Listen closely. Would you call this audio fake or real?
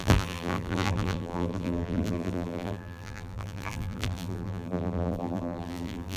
fake